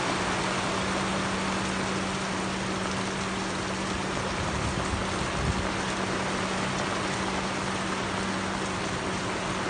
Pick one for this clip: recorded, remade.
recorded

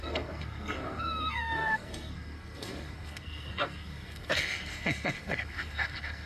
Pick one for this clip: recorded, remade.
remade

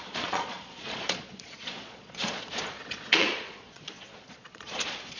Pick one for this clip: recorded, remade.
remade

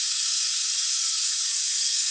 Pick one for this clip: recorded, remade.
remade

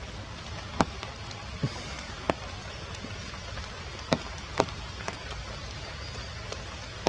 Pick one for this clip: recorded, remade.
recorded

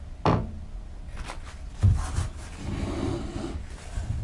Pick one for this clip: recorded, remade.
recorded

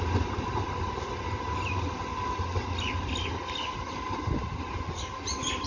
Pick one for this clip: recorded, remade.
recorded